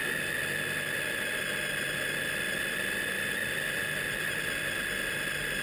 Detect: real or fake real